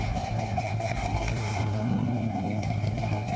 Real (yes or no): no